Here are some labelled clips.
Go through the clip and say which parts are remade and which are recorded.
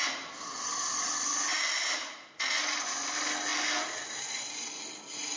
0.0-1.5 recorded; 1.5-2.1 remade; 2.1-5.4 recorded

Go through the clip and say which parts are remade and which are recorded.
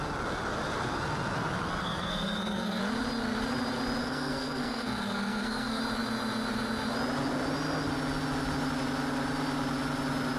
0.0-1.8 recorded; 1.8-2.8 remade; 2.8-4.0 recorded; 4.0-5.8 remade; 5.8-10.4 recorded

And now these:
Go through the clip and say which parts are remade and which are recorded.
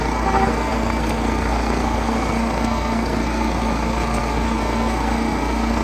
0.0-5.8 remade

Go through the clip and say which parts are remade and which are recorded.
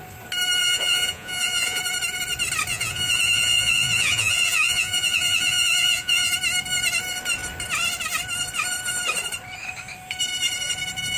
0.0-0.6 recorded; 0.6-1.8 remade; 1.8-2.7 recorded; 2.7-6.3 remade; 6.3-11.2 recorded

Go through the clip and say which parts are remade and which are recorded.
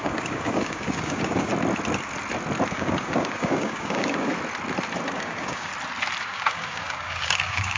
0.0-1.5 remade; 1.5-2.7 recorded; 2.7-4.3 remade; 4.3-5.1 recorded; 5.1-5.7 remade; 5.7-6.2 recorded; 6.2-7.8 remade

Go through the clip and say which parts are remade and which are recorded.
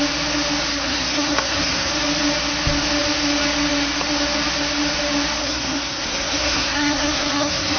0.0-0.7 recorded; 0.7-1.9 remade; 1.9-5.4 recorded; 5.4-7.8 remade